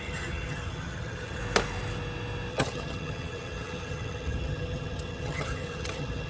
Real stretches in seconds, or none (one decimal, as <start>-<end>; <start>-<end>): 1.4-2.5